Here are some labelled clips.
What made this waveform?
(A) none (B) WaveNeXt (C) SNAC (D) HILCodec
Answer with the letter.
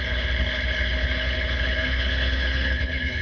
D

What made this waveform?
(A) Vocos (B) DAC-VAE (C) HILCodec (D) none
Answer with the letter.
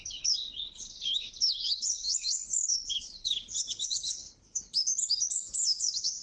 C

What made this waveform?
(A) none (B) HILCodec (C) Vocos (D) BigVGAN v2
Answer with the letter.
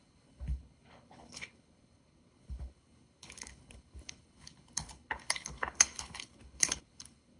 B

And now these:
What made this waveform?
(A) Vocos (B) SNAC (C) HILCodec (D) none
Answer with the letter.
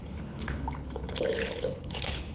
C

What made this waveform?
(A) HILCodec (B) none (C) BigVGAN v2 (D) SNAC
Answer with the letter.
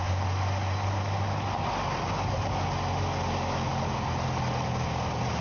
B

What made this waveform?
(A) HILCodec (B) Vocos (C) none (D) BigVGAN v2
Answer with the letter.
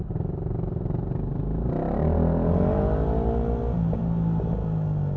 C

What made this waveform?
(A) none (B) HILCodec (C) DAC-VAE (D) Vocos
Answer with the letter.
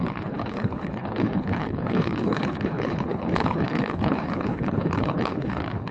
B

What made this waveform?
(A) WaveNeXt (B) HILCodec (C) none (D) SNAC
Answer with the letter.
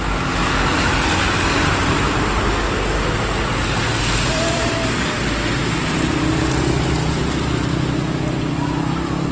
C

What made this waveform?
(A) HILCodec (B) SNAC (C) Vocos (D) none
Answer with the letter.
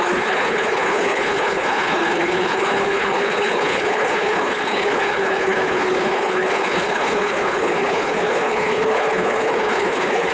A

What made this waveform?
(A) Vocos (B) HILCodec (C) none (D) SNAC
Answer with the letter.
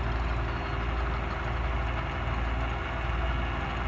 C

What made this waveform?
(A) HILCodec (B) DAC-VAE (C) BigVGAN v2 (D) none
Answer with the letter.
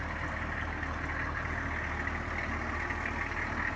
D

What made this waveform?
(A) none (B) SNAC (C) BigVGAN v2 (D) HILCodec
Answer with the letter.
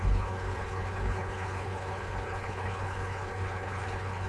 D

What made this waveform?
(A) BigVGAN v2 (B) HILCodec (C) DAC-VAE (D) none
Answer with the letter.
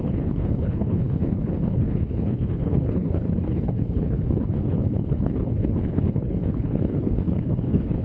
B